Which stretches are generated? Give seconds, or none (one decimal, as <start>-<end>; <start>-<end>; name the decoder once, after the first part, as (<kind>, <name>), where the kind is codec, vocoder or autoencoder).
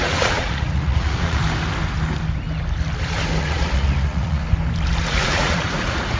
0.0-1.4 (vocoder, Vocos); 3.4-4.4; 5.0-6.2